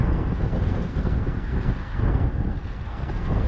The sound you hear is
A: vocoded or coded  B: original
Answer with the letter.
A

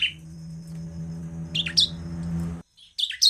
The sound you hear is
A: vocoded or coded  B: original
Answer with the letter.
B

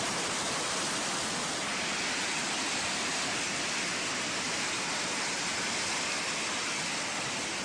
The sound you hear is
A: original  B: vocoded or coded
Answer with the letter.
A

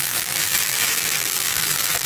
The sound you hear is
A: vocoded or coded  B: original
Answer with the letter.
A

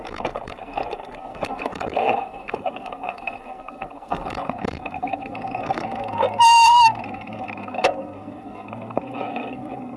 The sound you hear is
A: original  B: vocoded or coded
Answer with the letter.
B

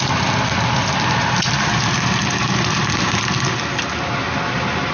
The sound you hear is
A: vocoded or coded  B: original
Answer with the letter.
B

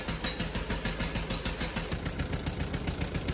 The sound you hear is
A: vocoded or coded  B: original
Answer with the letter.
B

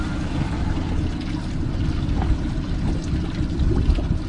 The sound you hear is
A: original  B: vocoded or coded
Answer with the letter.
A